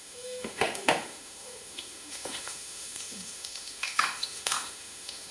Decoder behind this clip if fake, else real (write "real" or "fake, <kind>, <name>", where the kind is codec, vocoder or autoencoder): fake, autoencoder, DAC-VAE